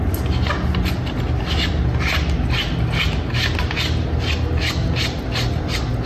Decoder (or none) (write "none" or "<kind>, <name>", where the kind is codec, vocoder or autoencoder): none